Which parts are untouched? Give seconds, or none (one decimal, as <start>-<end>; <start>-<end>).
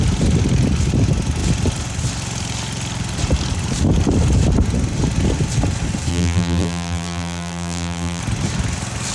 0.0-6.1; 8.2-9.1